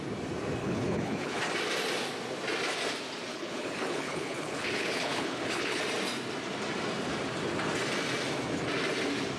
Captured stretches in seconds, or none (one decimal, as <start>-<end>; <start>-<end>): 0.0-0.6; 1.4-3.3; 5.8-9.4